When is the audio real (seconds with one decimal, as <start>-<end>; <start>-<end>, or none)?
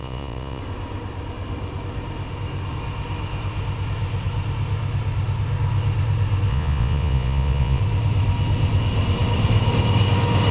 0.6-6.5; 7.8-10.5